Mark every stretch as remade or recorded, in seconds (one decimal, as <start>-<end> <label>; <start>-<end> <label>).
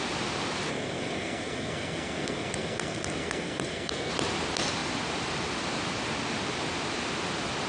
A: 0.0-0.7 recorded; 0.7-4.1 remade; 4.1-7.7 recorded